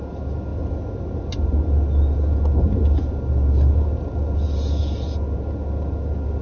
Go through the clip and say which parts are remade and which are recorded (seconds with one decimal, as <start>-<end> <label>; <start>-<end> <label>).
0.0-6.4 recorded